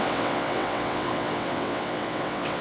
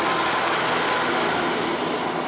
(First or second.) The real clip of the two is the second